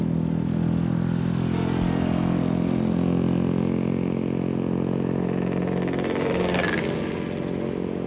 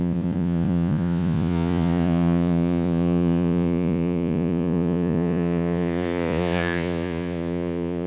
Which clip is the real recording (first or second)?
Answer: first